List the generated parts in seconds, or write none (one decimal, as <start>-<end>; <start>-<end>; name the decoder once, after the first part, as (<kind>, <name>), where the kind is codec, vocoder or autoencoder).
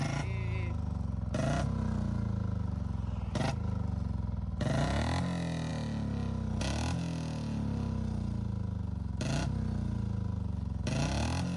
none